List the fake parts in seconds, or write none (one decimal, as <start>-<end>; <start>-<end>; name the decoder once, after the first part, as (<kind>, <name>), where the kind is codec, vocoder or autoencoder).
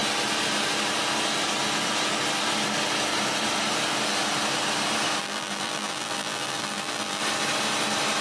5.2-7.2 (vocoder, BigVGAN v2)